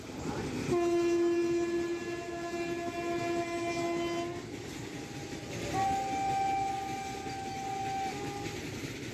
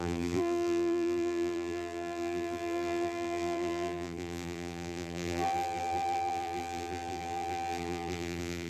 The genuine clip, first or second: first